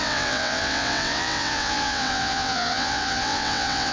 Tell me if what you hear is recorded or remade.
remade